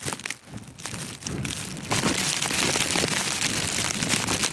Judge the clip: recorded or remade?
recorded